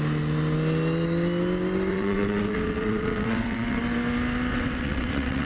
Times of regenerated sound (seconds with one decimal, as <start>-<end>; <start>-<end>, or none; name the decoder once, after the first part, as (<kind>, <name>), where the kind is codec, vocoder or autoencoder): 1.9-3.8 (vocoder, WaveNeXt); 4.5-5.5